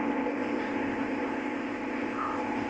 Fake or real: fake